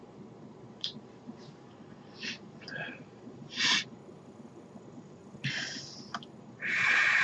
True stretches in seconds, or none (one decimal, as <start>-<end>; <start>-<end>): 4.0-4.8; 5.2-6.4